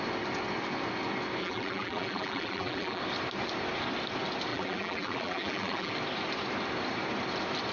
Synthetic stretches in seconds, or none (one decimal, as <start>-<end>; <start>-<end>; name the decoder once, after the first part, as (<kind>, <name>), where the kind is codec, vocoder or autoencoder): 1.4-3.0 (vocoder, BigVGAN v2); 4.5-5.9